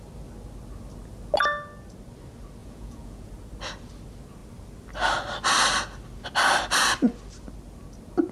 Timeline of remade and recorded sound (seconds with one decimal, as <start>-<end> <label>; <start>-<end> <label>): 0.0-2.6 recorded; 2.6-3.3 remade; 3.3-8.3 recorded